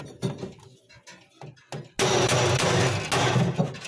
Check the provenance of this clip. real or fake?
real